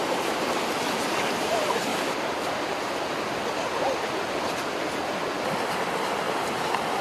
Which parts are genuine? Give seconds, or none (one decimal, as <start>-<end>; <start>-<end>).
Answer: 0.0-7.0